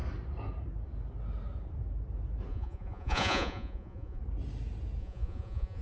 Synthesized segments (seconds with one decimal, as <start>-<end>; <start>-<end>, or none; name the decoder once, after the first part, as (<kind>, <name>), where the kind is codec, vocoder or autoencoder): 2.5-4.2 (vocoder, Vocos); 5.0-5.8